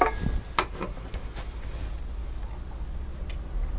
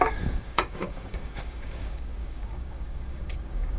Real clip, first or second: first